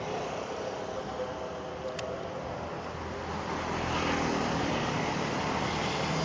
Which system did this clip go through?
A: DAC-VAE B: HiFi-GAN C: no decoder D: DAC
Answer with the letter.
C